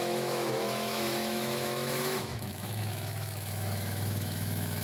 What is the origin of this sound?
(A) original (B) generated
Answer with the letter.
B